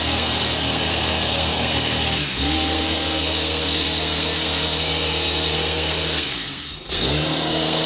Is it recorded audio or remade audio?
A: remade